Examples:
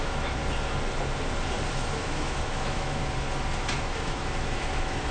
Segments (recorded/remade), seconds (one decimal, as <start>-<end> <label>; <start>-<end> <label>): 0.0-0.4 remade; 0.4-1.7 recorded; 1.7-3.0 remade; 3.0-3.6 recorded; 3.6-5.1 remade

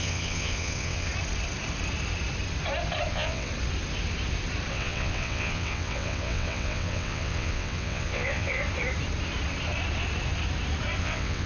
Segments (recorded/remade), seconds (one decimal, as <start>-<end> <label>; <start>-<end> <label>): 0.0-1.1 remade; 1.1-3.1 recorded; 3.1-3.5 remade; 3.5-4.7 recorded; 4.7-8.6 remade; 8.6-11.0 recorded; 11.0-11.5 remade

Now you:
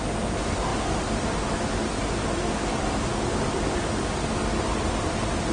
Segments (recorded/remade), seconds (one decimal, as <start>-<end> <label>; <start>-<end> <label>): 0.0-5.5 recorded

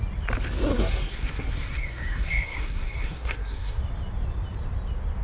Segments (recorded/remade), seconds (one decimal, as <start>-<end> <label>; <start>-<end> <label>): 0.0-0.7 recorded; 0.7-3.8 remade; 3.8-5.2 recorded

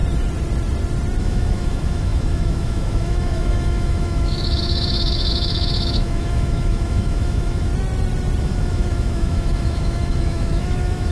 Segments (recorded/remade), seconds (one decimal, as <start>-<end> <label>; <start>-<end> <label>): 0.0-1.2 recorded; 1.2-7.7 remade; 7.7-8.4 recorded; 8.4-11.1 remade

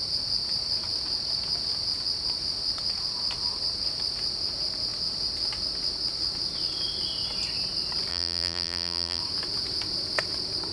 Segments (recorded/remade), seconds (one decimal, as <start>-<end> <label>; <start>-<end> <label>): 0.0-8.1 recorded; 8.1-9.2 remade; 9.2-10.7 recorded